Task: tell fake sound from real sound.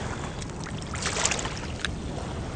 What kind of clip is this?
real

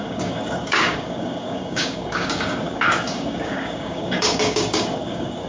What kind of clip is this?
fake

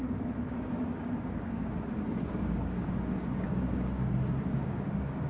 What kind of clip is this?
fake